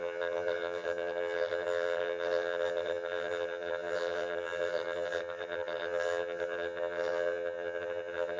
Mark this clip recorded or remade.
remade